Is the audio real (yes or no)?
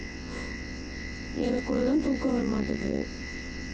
no